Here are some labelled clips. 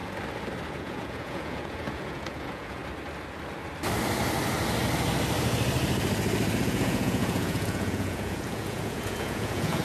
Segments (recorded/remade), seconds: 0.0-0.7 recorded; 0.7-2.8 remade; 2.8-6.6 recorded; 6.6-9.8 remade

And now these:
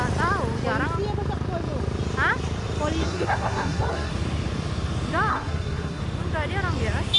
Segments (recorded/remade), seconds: 0.0-3.0 recorded; 3.0-4.1 remade; 4.1-5.3 recorded; 5.3-6.0 remade; 6.0-7.2 recorded

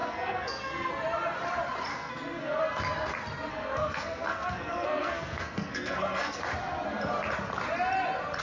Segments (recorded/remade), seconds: 0.0-0.9 remade; 0.9-1.9 recorded; 1.9-2.6 remade; 2.6-3.5 recorded; 3.5-6.4 remade; 6.4-8.4 recorded